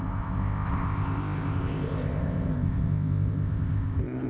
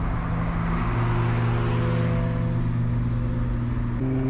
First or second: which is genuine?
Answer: second